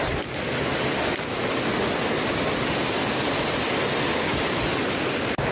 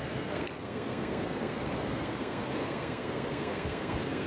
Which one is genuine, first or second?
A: first